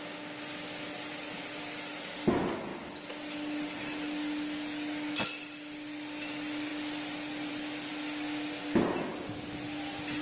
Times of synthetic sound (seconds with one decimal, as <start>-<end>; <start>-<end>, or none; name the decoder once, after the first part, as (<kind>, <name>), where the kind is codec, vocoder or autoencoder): none